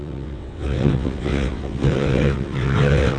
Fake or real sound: fake